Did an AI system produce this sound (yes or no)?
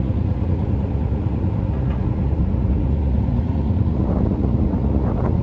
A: yes